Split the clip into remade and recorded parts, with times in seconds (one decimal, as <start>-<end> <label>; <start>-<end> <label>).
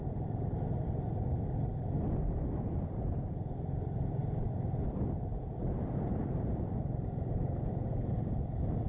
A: 0.0-8.9 recorded